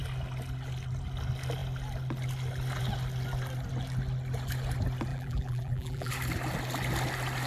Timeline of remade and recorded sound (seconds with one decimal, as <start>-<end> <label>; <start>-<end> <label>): 0.0-5.1 recorded; 5.1-6.1 remade; 6.1-7.5 recorded